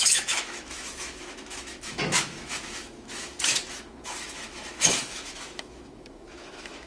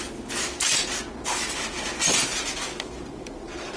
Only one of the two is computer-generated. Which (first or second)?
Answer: first